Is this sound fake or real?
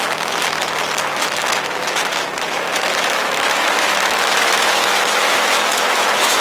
fake